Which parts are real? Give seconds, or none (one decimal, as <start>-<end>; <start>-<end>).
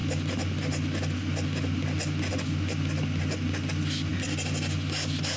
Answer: 0.0-5.4